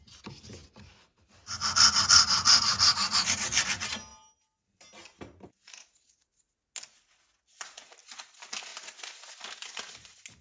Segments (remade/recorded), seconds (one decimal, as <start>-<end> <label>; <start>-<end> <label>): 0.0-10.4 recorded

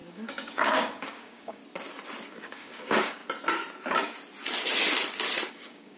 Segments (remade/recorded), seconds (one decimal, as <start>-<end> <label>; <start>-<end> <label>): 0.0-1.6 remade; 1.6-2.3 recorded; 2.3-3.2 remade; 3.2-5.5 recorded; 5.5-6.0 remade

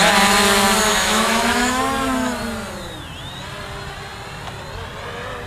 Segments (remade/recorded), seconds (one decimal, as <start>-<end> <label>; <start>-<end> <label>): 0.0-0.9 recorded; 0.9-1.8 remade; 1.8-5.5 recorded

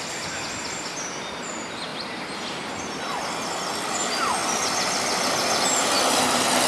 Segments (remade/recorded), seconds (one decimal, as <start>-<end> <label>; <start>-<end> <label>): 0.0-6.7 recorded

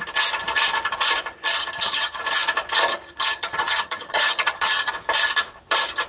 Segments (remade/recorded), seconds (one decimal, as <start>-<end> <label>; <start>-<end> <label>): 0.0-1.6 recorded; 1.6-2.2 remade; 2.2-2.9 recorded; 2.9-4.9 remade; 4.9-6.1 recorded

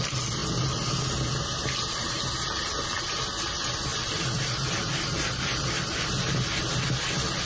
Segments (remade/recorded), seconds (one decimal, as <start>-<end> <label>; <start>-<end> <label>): 0.0-7.5 recorded